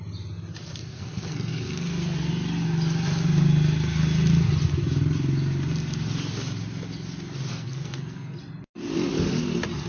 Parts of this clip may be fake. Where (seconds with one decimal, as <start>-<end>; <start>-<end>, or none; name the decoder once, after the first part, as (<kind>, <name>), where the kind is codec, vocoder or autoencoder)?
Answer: 0.8-2.3 (codec, SNAC); 7.5-8.4